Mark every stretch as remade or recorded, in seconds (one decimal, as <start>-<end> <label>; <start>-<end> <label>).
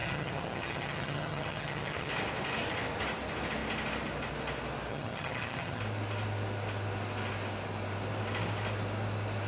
0.0-2.1 remade; 2.1-4.9 recorded; 4.9-5.8 remade; 5.8-9.5 recorded